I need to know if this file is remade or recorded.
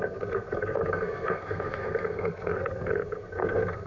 remade